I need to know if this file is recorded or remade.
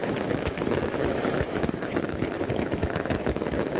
remade